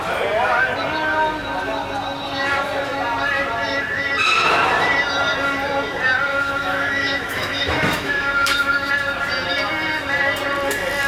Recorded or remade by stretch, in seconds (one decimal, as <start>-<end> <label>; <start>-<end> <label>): 0.0-6.3 recorded; 6.3-8.9 remade; 8.9-11.1 recorded